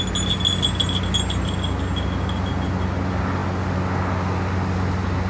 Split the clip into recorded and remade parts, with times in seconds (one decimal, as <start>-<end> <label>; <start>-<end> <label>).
0.0-5.3 recorded